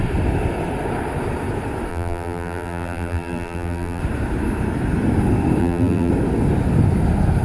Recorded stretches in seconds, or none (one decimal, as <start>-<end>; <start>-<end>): 0.0-1.9; 4.0-5.6; 6.1-7.4